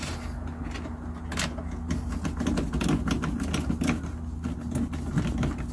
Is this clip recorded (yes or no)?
yes